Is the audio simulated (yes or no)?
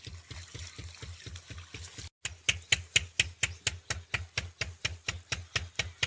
no